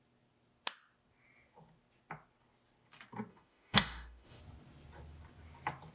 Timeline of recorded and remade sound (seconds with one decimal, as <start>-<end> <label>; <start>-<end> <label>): 0.0-3.3 recorded; 3.3-4.4 remade; 4.4-5.9 recorded